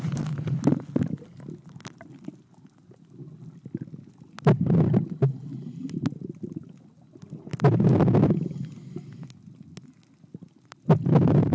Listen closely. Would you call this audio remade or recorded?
recorded